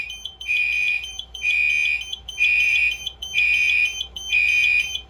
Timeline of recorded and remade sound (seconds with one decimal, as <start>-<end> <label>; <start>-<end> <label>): 0.0-1.6 remade; 1.6-2.1 recorded; 2.1-5.1 remade